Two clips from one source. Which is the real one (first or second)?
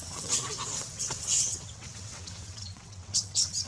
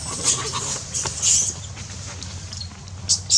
second